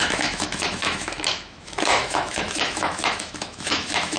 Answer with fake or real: fake